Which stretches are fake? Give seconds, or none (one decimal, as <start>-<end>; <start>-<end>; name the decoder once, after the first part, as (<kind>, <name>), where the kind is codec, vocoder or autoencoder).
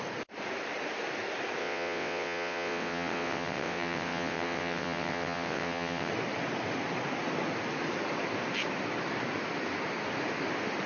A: 1.6-6.1 (vocoder, WaveNeXt)